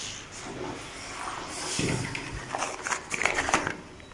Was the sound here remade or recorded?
recorded